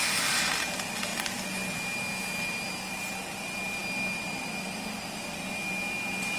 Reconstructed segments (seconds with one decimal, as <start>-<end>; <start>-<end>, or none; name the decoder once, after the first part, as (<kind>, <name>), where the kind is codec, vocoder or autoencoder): none